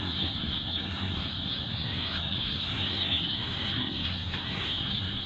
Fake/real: fake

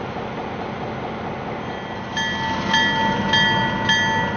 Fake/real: real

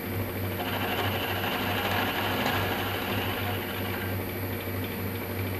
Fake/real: real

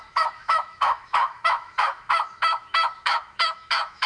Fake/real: fake